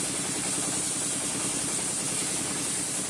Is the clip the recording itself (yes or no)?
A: yes